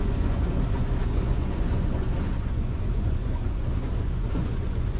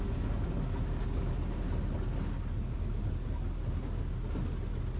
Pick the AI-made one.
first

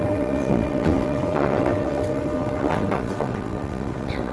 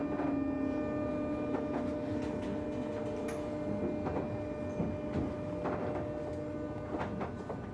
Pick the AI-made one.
first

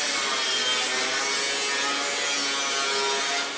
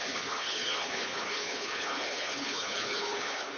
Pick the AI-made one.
second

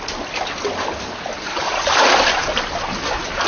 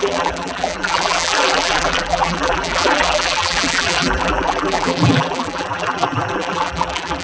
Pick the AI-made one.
second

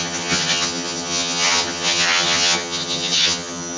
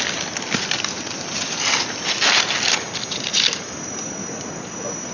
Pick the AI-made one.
first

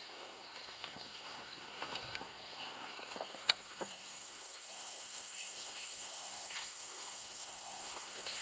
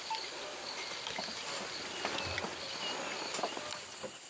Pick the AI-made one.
first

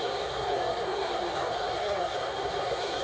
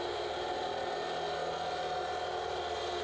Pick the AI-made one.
first